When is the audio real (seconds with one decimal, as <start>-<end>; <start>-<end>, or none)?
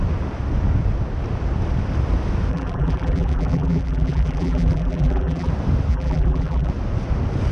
0.0-2.5; 5.5-5.9; 6.7-7.5